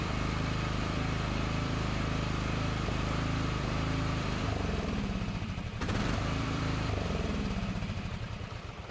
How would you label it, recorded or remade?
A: remade